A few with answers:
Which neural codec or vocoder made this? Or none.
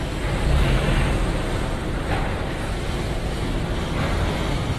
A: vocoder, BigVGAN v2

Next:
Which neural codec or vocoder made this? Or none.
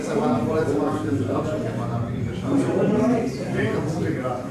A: vocoder, BigVGAN v2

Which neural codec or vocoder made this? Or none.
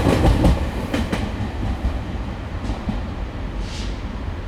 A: none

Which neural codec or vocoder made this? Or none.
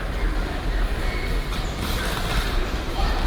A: vocoder, BigVGAN v2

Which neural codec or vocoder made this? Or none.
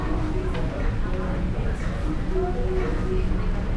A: none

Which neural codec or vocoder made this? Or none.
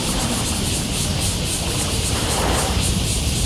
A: vocoder, BigVGAN v2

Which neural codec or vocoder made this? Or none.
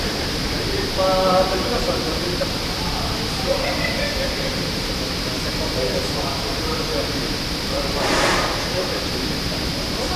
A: vocoder, BigVGAN v2